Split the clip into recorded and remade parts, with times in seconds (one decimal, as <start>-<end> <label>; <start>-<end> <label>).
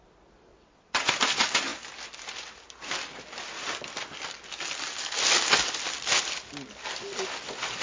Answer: 0.0-0.5 recorded; 0.5-1.1 remade; 1.1-7.8 recorded